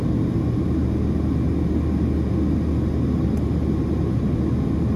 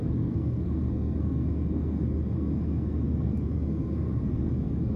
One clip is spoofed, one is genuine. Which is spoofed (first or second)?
second